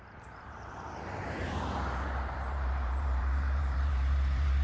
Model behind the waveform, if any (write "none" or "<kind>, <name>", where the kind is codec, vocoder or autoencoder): vocoder, BigVGAN v2